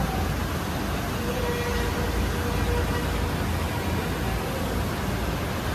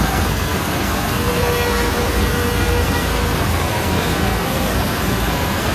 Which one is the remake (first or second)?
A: second